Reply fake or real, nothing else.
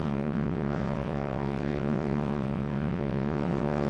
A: fake